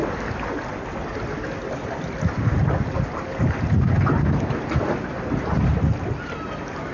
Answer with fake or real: real